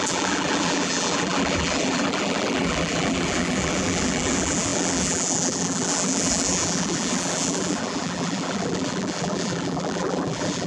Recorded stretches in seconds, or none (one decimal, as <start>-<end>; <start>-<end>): none